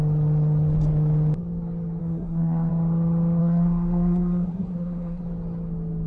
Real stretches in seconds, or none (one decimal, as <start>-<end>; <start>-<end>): 0.0-2.0; 2.7-3.4; 5.2-6.1